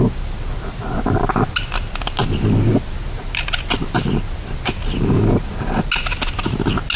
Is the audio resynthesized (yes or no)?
no